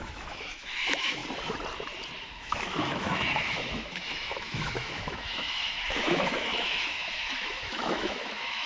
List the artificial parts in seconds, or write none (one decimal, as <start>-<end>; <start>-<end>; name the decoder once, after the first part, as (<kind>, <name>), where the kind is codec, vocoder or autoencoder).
0.0-1.2 (autoencoder, DAC-VAE); 2.2-8.7